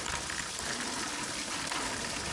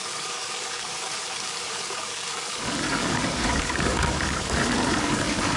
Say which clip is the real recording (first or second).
first